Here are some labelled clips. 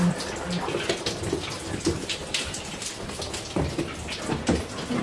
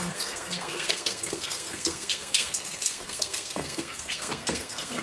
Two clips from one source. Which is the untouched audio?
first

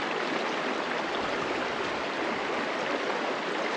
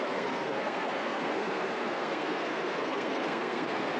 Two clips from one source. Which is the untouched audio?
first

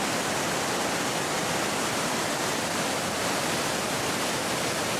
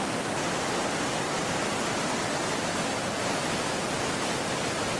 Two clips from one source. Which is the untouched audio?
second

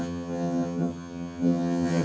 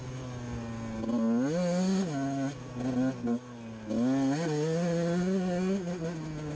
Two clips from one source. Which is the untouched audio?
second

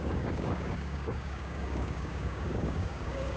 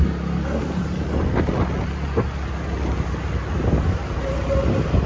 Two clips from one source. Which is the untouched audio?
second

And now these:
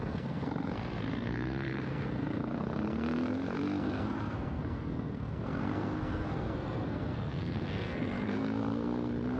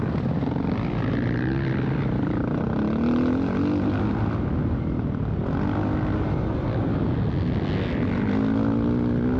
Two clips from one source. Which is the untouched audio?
second